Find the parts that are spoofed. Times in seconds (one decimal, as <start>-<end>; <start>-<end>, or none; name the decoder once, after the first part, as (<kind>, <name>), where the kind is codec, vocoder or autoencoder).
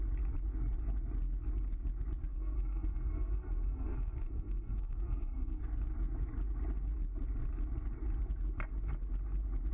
2.3-5.6 (codec, SNAC)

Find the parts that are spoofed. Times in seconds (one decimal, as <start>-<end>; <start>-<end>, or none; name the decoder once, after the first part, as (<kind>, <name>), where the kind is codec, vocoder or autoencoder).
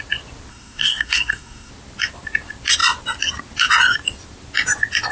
0.5-1.7 (codec, SNAC)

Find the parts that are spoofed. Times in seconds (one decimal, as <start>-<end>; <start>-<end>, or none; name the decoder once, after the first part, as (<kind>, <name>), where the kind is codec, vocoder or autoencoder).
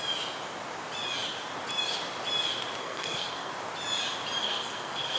2.8-3.5 (codec, SNAC); 4.4-5.2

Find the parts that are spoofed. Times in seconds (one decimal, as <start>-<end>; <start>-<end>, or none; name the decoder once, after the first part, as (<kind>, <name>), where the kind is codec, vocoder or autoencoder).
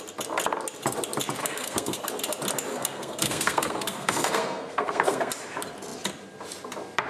1.4-2.1 (codec, SNAC); 2.7-5.3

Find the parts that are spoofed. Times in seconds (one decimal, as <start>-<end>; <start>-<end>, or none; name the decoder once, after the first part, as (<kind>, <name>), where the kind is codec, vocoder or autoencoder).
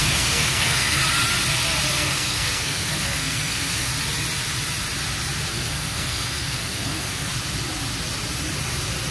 0.0-1.0 (codec, SNAC); 1.9-3.9; 5.5-7.3